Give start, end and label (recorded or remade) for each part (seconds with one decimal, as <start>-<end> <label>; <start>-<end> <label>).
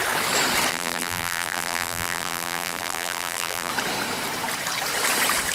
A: 0.0-0.7 recorded; 0.7-3.7 remade; 3.7-5.5 recorded